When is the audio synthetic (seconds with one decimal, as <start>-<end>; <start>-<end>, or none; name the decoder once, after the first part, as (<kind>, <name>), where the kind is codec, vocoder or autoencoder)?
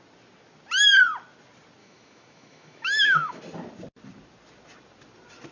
1.8-3.4 (autoencoder, DAC-VAE)